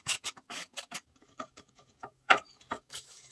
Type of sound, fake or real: fake